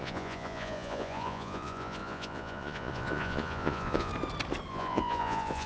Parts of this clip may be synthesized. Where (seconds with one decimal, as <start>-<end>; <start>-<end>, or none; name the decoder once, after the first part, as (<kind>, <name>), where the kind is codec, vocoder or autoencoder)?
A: 0.0-4.1 (vocoder, Vocos); 4.7-5.7